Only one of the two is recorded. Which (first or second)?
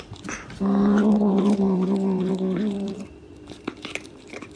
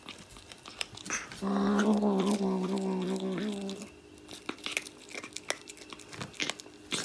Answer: second